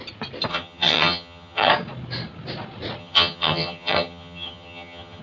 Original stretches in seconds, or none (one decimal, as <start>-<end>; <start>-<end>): 0.0-0.5; 1.7-3.0

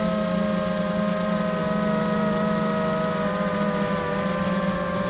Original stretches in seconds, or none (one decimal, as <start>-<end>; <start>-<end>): 0.0-5.1